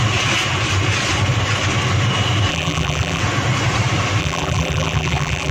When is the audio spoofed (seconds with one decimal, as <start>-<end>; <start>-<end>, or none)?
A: 2.5-3.2; 4.2-5.5